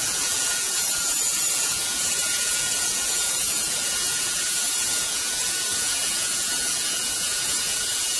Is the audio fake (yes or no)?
yes